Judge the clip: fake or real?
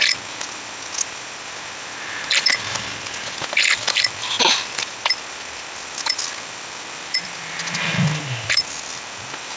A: real